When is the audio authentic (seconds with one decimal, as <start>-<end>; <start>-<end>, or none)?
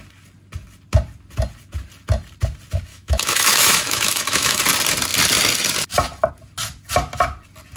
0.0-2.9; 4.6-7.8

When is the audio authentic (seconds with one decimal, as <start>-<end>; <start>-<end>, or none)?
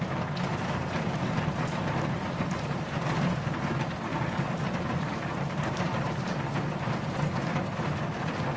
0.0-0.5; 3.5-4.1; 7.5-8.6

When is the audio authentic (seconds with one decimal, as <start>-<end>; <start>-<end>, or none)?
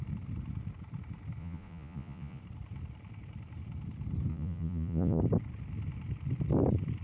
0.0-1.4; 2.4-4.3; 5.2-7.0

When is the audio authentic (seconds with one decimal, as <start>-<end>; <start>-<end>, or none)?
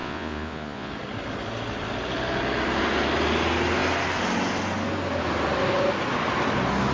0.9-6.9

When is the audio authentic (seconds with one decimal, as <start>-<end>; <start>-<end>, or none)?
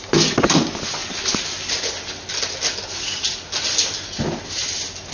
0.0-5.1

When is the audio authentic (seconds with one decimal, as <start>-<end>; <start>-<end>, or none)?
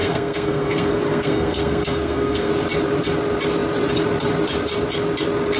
2.5-5.6